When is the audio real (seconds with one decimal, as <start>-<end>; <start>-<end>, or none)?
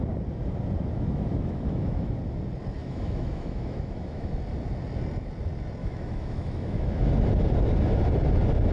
0.0-1.3; 2.2-2.8; 4.4-5.8; 7.1-8.7